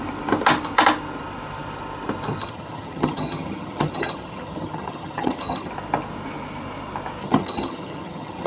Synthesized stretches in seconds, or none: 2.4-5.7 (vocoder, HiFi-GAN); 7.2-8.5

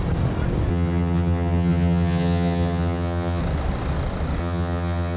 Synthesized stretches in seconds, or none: 0.7-3.4 (vocoder, HiFi-GAN); 4.4-5.2

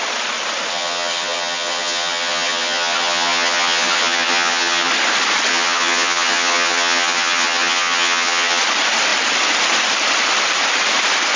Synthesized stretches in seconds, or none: 0.7-4.9 (vocoder, HiFi-GAN); 5.5-8.6

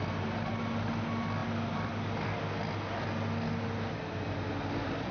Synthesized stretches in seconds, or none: none

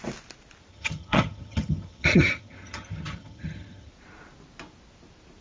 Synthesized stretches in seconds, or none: 0.7-3.9 (vocoder, HiFi-GAN)

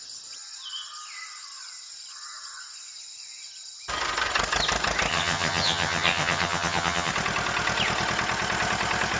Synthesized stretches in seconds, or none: 5.1-7.1 (vocoder, HiFi-GAN)